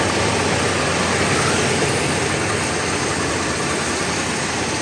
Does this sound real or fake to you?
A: real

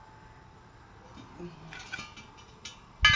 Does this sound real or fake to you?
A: real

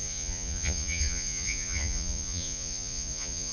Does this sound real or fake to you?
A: fake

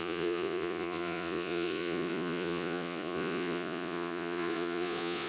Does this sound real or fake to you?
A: fake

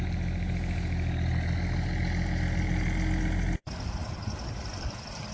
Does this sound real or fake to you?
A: real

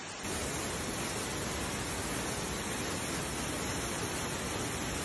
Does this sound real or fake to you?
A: real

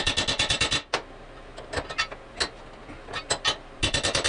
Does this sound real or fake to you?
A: real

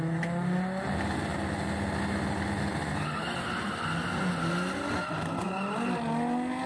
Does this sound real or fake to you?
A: real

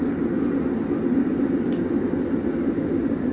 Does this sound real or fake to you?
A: real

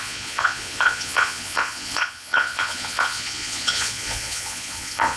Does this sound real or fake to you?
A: fake